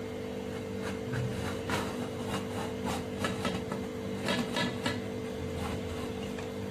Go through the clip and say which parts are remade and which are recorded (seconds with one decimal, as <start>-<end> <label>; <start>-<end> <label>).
0.0-1.3 recorded; 1.3-1.9 remade; 1.9-6.7 recorded